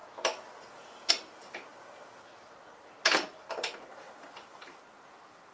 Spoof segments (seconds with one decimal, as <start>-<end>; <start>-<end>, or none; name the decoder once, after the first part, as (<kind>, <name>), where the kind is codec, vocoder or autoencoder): 0.0-1.1 (vocoder, BigVGAN v2); 1.7-2.5; 3.3-3.9